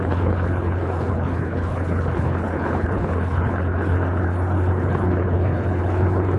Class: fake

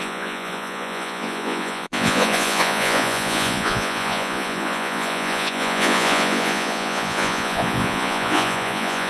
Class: fake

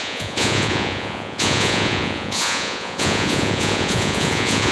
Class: fake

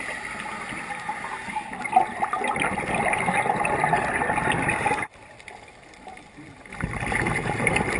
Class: real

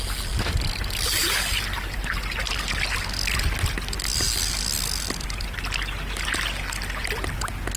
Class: real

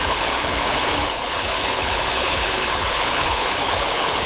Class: fake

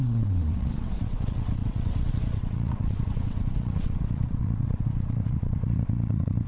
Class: fake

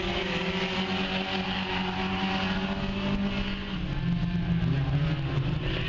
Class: real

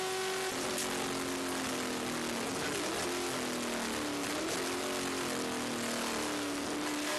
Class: real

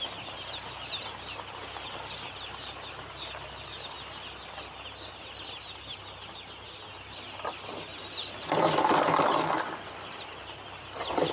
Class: real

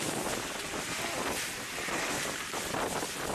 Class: real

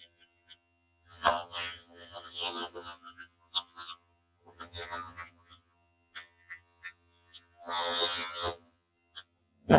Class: fake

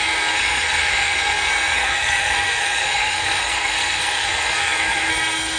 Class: fake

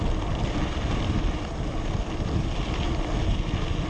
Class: real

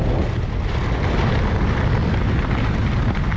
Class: real